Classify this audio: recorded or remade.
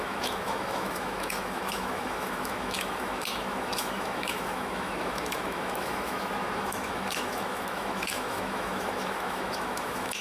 remade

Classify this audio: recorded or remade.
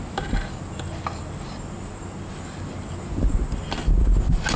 recorded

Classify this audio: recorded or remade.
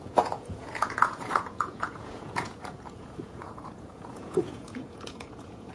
remade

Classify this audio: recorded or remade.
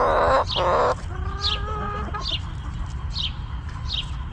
recorded